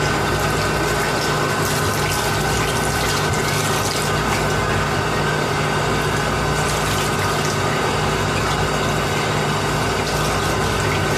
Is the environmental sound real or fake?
real